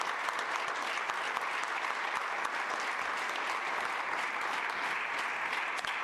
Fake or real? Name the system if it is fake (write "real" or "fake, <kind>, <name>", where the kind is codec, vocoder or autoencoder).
real